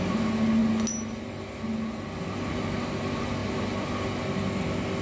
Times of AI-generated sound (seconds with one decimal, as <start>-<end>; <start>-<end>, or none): none